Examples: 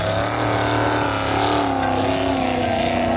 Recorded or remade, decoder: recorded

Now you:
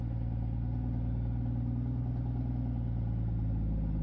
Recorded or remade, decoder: recorded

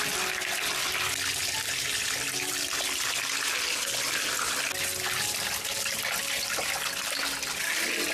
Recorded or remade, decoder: recorded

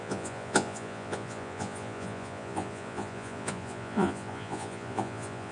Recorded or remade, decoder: remade, vocoder, Vocos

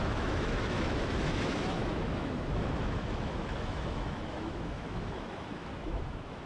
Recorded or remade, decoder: remade, autoencoder, DAC-VAE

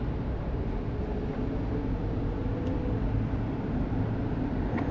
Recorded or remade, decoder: recorded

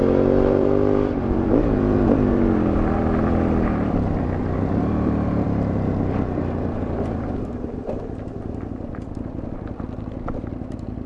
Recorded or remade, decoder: remade, vocoder, BigVGAN v2